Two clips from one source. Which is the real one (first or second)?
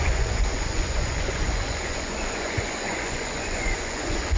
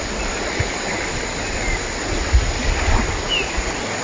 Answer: second